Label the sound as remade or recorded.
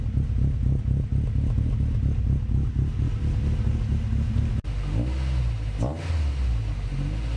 recorded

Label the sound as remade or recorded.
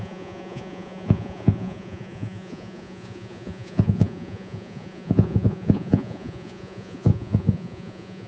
remade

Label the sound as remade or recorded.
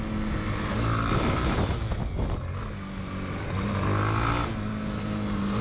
recorded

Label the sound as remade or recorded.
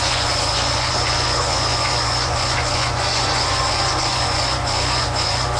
remade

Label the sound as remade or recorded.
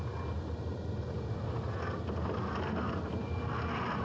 recorded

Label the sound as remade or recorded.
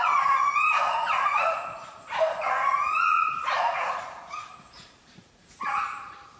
remade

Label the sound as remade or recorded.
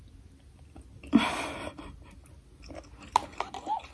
recorded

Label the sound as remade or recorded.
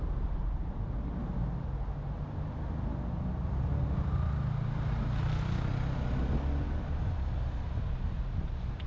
recorded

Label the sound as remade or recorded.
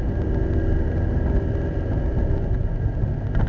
recorded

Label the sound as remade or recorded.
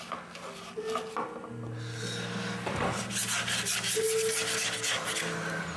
recorded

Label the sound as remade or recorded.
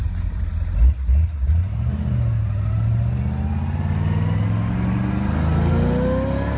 recorded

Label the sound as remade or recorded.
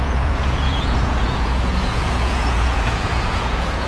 remade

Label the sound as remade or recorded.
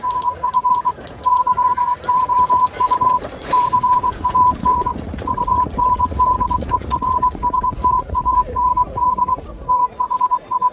remade